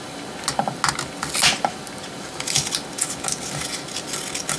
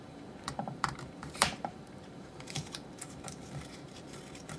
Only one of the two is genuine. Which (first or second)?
first